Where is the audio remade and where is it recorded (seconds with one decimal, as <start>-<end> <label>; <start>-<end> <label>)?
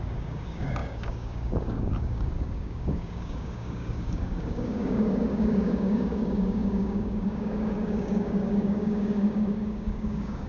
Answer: 0.0-10.5 remade